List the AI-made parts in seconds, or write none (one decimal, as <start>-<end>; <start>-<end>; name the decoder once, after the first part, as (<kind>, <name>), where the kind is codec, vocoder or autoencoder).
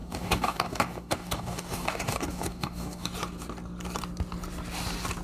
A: 0.0-3.1 (codec, DAC)